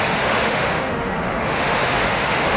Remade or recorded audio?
remade